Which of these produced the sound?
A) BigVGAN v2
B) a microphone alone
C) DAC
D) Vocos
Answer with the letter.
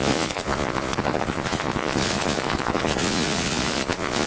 D